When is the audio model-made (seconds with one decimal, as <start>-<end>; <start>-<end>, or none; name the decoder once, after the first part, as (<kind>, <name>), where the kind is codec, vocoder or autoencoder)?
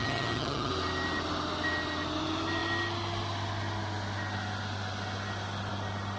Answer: 0.0-0.7 (vocoder, HiFi-GAN)